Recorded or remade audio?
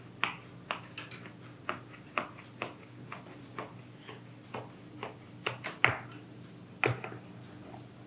recorded